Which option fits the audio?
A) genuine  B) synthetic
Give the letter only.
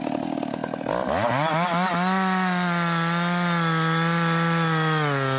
A